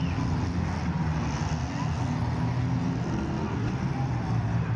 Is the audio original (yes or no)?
yes